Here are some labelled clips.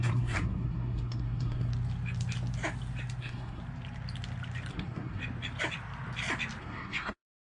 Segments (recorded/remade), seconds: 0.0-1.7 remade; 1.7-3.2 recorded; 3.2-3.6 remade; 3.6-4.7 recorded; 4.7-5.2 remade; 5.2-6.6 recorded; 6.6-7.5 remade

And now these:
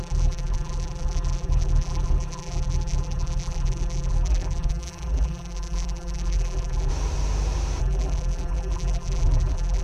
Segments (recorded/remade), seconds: 0.0-6.9 remade; 6.9-7.8 recorded; 7.8-9.8 remade

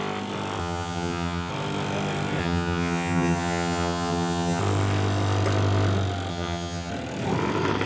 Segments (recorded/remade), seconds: 0.0-0.6 recorded; 0.6-1.5 remade; 1.5-2.4 recorded; 2.4-4.6 remade; 4.6-6.3 recorded; 6.3-6.9 remade; 6.9-7.9 recorded

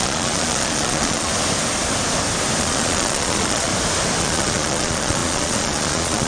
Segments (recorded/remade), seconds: 0.0-1.3 remade; 1.3-2.6 recorded; 2.6-3.7 remade; 3.7-4.2 recorded; 4.2-6.3 remade

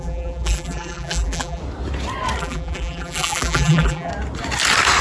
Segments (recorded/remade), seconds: 0.0-1.6 remade; 1.6-2.4 recorded; 2.4-4.1 remade; 4.1-5.0 recorded

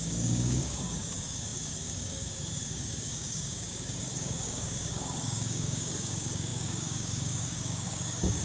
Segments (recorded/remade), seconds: 0.0-8.4 remade

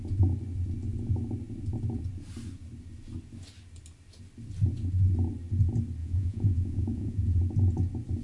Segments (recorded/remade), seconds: 0.0-6.0 recorded; 6.0-7.4 remade; 7.4-8.2 recorded